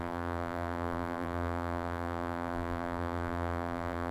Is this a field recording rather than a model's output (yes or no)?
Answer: no